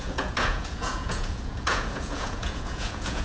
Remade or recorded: remade